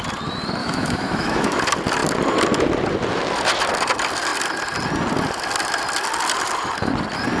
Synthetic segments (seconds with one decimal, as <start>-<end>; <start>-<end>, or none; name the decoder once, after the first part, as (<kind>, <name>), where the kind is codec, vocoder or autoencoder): 0.6-1.6 (autoencoder, DAC-VAE)